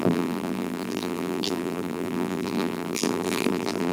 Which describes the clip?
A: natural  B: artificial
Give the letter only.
B